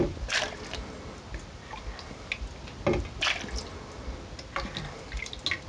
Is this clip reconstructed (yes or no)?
no